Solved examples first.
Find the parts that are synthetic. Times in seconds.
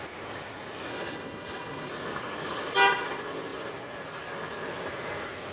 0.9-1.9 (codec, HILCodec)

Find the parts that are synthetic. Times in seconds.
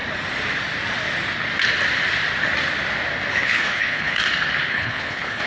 3.3-4.2 (codec, HILCodec); 4.7-5.5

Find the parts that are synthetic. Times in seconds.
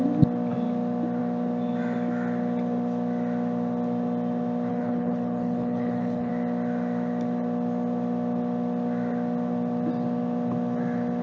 4.7-6.3 (codec, HILCodec)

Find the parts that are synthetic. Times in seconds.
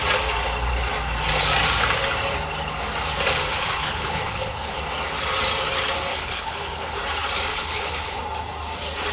3.4-4.8 (codec, HILCodec); 6.1-7.0; 7.5-8.2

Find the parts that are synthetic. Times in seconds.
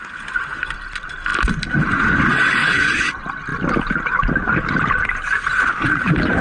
2.6-3.1 (codec, HILCodec)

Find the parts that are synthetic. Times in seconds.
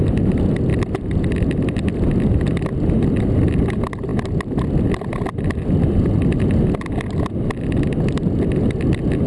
none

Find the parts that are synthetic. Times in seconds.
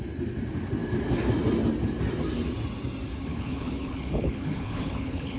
3.3-5.4 (codec, HILCodec)